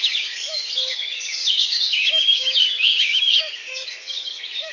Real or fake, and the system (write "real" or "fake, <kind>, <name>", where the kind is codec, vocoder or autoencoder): fake, codec, DAC